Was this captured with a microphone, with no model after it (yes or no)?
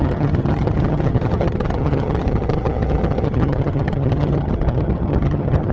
no